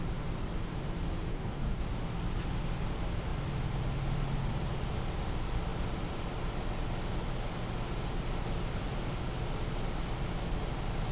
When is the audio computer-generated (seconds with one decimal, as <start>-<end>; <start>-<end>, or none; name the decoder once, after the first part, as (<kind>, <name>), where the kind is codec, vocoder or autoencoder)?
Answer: 1.3-1.8 (codec, DAC)